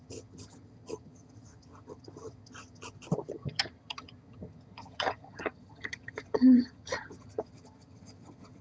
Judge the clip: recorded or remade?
remade